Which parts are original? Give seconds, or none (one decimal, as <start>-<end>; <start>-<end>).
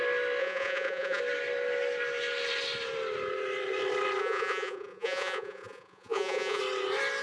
0.0-0.4; 1.2-4.2; 6.6-7.2